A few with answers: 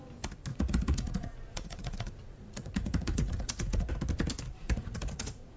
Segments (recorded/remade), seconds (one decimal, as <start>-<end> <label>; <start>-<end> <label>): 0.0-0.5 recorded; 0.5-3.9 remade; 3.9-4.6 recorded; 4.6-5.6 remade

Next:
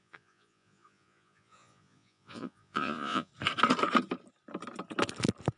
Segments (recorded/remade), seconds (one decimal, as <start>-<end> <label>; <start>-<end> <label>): 0.0-3.3 remade; 3.3-5.6 recorded

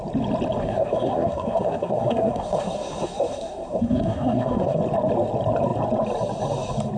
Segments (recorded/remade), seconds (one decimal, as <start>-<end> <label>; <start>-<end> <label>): 0.0-0.6 recorded; 0.6-4.8 remade; 4.8-7.0 recorded